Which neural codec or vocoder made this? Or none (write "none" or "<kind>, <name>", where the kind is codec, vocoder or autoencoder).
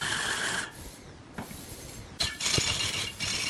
none